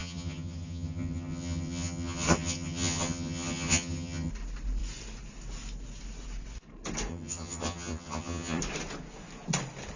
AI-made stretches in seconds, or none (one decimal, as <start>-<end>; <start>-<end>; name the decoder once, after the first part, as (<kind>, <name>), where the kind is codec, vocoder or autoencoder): 0.0-4.3 (vocoder, HiFi-GAN); 7.1-8.6